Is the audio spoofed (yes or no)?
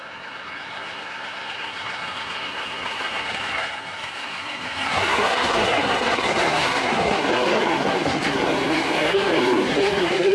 yes